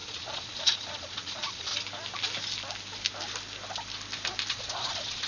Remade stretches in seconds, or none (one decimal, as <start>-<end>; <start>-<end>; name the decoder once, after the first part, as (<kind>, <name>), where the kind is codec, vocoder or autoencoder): 0.0-1.7 (vocoder, Vocos); 4.5-5.3